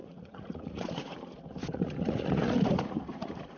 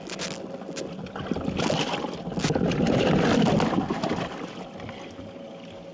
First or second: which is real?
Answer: second